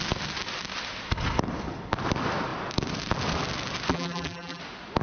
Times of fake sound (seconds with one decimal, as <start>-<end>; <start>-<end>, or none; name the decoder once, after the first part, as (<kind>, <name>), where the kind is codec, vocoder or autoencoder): 3.9-4.6 (vocoder, BigVGAN v2)